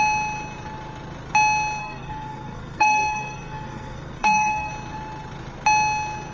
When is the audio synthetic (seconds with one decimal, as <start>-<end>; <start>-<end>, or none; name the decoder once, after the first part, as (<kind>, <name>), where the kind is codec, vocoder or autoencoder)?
1.8-4.7 (codec, SNAC)